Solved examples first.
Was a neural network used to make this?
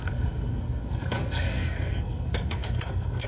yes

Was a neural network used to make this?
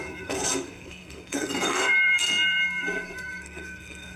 yes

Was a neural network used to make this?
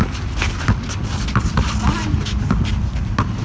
no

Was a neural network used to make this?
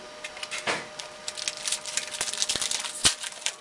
no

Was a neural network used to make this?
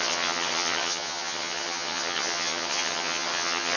yes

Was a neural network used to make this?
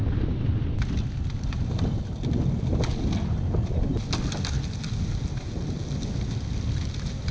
no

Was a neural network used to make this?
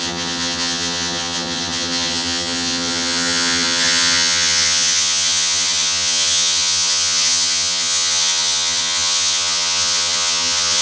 yes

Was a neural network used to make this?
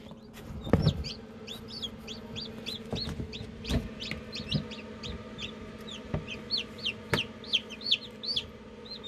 no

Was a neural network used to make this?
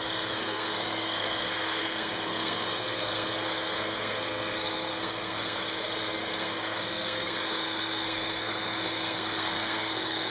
yes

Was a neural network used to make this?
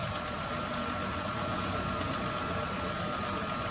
yes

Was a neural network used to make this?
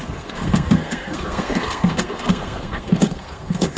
yes